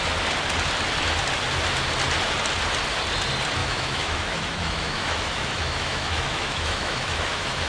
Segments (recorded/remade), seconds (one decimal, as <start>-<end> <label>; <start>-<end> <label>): 0.0-3.6 recorded; 3.6-7.7 remade